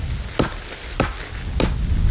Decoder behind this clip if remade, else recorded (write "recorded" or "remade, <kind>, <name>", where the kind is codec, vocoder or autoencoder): recorded